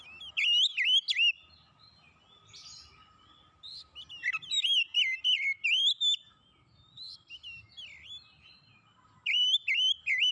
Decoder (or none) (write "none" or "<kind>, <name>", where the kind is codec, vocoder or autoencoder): none